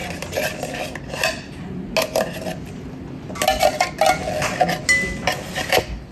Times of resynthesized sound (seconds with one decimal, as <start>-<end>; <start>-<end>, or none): none